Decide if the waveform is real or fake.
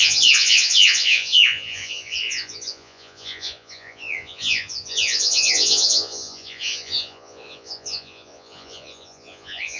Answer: fake